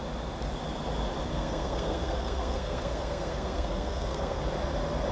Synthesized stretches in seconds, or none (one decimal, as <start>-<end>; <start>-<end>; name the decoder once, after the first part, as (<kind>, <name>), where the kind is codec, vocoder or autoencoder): 1.3-4.4 (codec, SNAC)